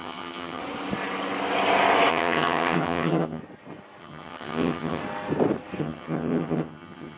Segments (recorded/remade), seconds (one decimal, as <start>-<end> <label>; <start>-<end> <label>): 0.0-0.6 remade; 0.6-2.1 recorded; 2.1-3.4 remade; 3.4-4.0 recorded; 4.0-5.0 remade; 5.0-5.8 recorded; 5.8-7.2 remade